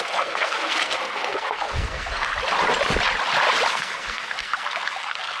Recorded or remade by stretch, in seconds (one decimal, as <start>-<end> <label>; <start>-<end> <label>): 0.0-2.3 remade; 2.3-3.7 recorded; 3.7-5.4 remade